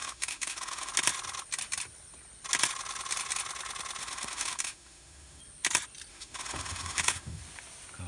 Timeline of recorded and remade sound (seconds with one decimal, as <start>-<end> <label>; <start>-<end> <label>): 0.0-0.9 remade; 0.9-4.0 recorded; 4.0-5.4 remade; 5.4-6.1 recorded; 6.1-7.4 remade; 7.4-8.1 recorded